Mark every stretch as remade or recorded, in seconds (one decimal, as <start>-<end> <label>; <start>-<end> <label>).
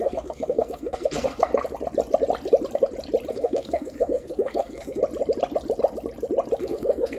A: 0.0-1.5 remade; 1.5-3.3 recorded; 3.3-5.0 remade; 5.0-6.6 recorded; 6.6-7.2 remade